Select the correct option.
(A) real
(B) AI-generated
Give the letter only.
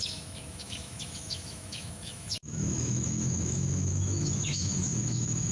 B